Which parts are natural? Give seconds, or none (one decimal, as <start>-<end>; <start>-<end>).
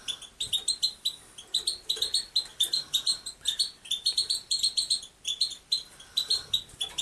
0.0-7.0